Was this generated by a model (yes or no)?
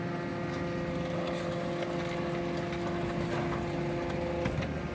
no